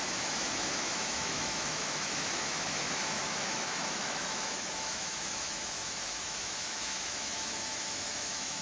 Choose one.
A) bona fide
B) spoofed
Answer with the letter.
B